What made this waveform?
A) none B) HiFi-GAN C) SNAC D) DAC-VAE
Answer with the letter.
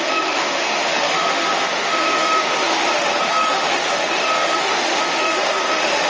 D